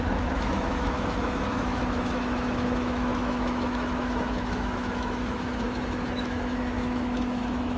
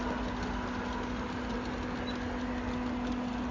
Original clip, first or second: second